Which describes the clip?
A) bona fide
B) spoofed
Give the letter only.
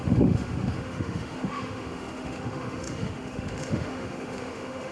B